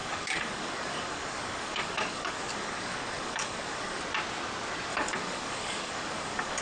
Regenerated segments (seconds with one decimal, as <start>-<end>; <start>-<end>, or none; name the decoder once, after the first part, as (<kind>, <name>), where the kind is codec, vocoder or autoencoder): 0.0-4.0 (codec, DAC); 4.9-6.6